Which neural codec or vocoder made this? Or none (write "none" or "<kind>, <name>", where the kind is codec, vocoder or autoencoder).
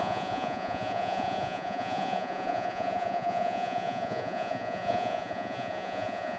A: vocoder, Vocos